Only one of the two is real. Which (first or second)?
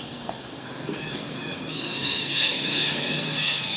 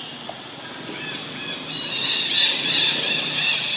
second